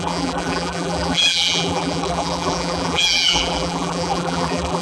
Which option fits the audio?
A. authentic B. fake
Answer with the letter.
B